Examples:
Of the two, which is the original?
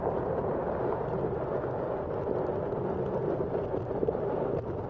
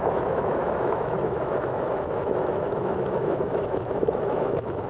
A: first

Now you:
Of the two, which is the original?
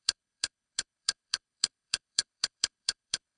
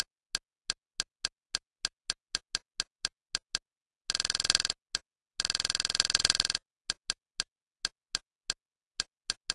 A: second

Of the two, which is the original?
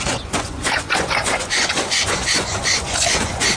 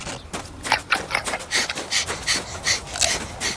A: second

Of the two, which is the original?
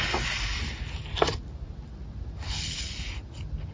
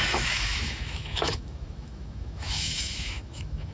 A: first